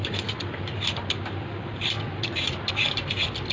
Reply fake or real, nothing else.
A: real